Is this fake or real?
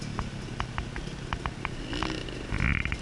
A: real